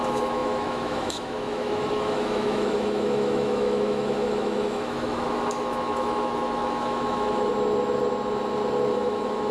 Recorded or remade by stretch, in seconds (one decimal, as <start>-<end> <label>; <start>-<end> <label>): 0.0-7.5 remade; 7.5-8.9 recorded; 8.9-9.5 remade

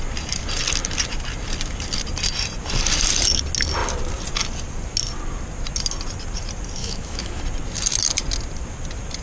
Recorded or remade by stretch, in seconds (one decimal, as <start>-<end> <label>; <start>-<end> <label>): 0.0-6.8 recorded; 6.8-7.4 remade; 7.4-9.2 recorded